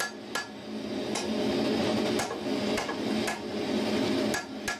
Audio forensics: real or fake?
real